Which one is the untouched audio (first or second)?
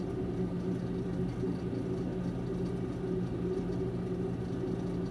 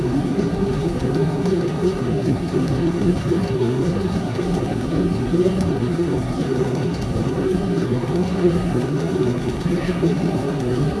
first